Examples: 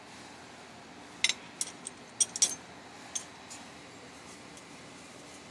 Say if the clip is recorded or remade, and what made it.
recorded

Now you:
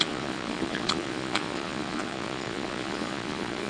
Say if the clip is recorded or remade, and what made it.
remade, vocoder, Vocos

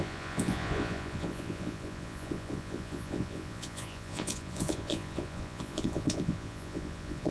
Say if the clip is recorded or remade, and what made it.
remade, vocoder, Vocos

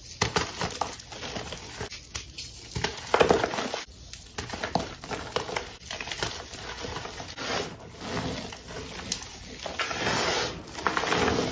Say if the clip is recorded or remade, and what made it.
recorded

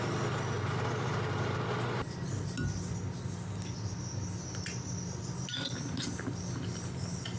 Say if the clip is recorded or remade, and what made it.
recorded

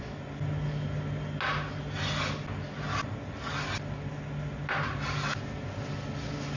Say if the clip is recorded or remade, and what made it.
recorded